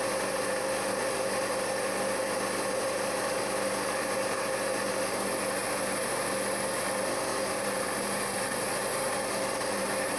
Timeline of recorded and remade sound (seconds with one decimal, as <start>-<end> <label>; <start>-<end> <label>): 0.0-7.3 recorded; 7.3-10.2 remade